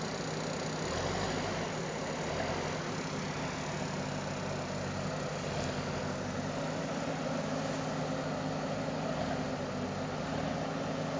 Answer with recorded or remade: recorded